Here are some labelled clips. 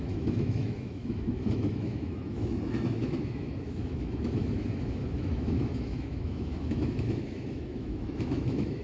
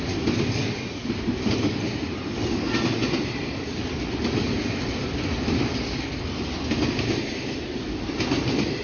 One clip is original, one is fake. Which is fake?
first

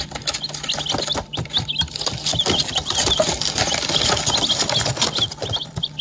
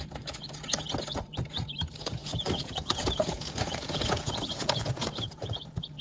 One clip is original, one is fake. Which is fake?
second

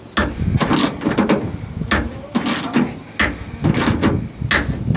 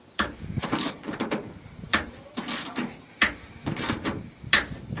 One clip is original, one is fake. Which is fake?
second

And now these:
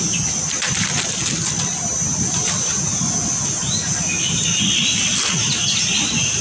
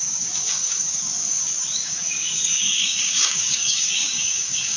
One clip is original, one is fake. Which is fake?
second